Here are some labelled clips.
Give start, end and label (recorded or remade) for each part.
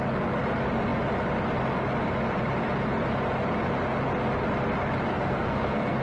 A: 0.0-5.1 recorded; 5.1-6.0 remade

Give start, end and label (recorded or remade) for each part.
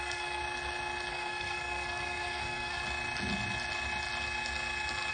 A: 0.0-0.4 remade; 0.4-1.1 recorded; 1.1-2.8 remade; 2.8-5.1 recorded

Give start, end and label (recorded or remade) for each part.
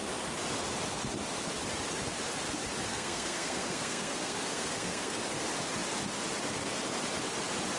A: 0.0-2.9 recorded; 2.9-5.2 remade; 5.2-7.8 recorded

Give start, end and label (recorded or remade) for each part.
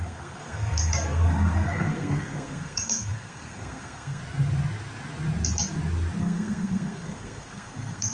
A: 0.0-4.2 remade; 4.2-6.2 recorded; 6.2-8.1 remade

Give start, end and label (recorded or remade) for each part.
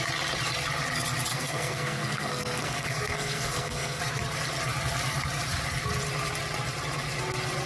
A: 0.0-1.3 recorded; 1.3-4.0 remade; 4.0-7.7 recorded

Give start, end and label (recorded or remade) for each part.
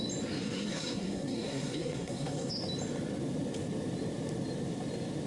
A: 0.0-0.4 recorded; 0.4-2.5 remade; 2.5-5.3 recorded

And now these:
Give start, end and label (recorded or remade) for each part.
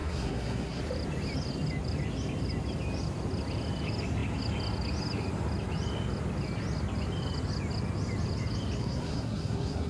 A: 0.0-0.8 remade; 0.8-8.8 recorded; 8.8-9.9 remade